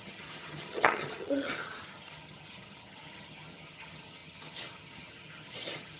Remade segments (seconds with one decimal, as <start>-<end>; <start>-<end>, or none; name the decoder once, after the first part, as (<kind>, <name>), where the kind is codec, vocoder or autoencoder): 0.0-6.0 (vocoder, HiFi-GAN)